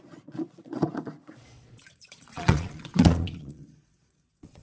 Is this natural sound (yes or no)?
no